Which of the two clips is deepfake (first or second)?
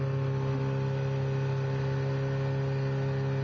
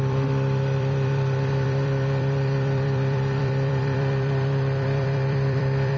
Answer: second